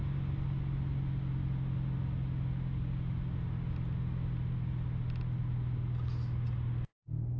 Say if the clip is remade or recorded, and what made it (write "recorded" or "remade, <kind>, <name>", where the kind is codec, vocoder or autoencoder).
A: recorded